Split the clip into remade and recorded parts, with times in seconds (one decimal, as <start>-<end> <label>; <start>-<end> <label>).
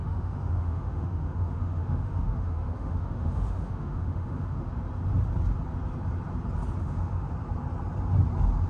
0.0-4.7 remade; 4.7-6.8 recorded; 6.8-7.3 remade; 7.3-8.7 recorded